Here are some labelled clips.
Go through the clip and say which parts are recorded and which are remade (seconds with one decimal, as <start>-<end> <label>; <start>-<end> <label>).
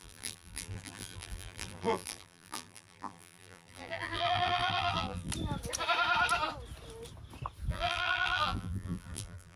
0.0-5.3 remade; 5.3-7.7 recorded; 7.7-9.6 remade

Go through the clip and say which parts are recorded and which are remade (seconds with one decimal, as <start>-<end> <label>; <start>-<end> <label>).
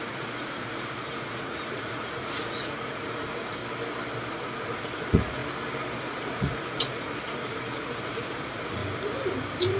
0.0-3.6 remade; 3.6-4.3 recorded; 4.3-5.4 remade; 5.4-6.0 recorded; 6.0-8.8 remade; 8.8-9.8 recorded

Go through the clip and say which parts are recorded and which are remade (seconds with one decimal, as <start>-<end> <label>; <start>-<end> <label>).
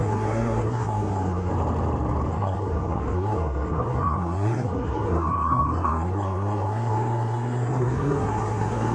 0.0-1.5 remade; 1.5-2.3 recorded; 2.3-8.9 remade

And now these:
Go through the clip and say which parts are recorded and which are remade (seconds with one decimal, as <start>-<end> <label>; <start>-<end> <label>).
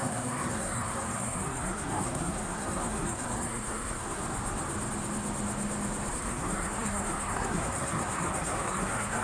0.0-4.2 remade; 4.2-6.1 recorded; 6.1-9.2 remade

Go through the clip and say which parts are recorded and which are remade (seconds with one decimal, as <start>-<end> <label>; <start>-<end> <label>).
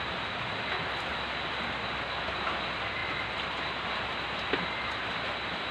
0.0-5.7 recorded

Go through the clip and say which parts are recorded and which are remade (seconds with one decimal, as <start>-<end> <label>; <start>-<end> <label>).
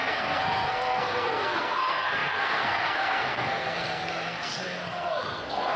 0.0-5.8 remade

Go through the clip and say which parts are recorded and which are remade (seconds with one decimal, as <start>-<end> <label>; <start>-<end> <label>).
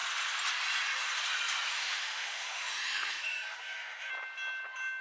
0.0-1.7 recorded; 1.7-4.1 remade; 4.1-5.0 recorded